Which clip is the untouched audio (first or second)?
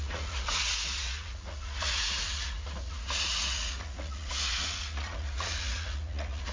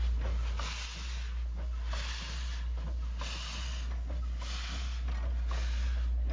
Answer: second